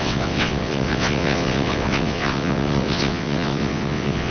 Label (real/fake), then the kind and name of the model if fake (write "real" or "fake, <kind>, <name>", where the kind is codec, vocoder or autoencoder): fake, vocoder, WaveNeXt